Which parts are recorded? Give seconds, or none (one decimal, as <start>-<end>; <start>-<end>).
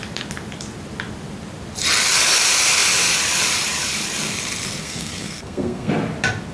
0.0-4.8; 5.9-6.5